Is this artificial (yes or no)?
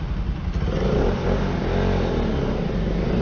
no